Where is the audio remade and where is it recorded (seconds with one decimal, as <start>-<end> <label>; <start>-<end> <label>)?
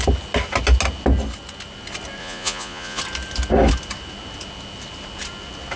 0.0-2.2 recorded; 2.2-3.0 remade; 3.0-5.8 recorded